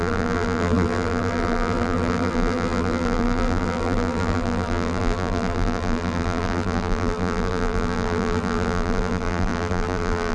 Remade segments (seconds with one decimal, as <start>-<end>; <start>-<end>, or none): 0.0-10.3